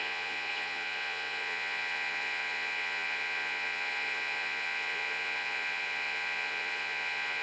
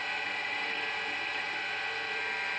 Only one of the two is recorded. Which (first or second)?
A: second